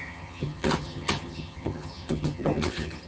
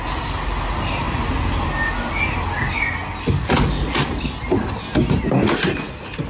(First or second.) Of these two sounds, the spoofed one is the first